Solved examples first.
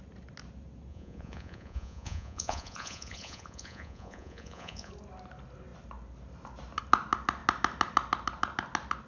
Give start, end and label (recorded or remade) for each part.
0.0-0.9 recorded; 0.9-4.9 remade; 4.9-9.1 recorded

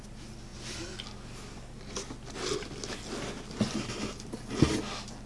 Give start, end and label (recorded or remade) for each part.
0.0-5.3 recorded

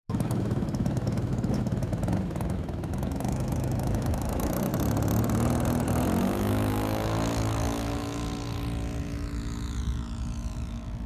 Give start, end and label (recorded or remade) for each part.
0.0-4.7 remade; 4.7-6.2 recorded; 6.2-8.2 remade; 8.2-9.0 recorded; 9.0-11.1 remade

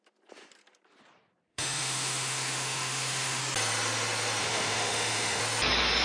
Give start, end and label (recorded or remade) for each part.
0.0-1.5 recorded; 1.5-3.4 remade; 3.4-4.4 recorded; 4.4-5.4 remade; 5.4-6.0 recorded

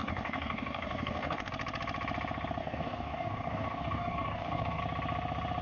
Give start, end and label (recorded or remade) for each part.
0.0-1.5 remade; 1.5-2.6 recorded; 2.6-4.8 remade; 4.8-5.6 recorded

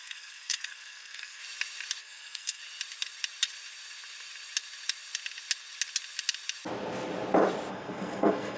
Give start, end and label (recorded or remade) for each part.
0.0-1.4 remade; 1.4-2.0 recorded; 2.0-2.6 remade; 2.6-7.7 recorded; 7.7-8.6 remade

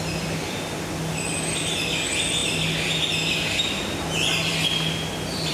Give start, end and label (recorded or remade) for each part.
0.0-5.5 recorded

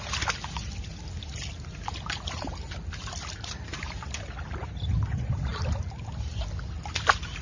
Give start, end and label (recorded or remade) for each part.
0.0-7.4 recorded